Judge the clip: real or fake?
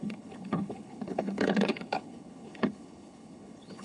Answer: fake